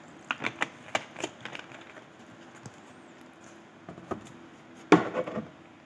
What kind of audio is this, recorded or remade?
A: recorded